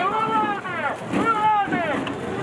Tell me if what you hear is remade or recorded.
recorded